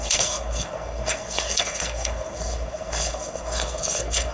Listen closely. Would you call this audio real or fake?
fake